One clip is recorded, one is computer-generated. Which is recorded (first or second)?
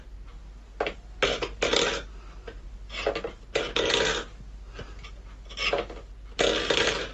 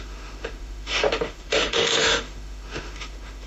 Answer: first